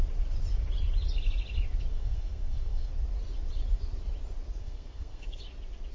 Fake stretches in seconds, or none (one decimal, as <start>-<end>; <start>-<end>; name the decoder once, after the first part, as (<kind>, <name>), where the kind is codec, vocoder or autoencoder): 1.9-2.9 (codec, SNAC); 4.6-5.4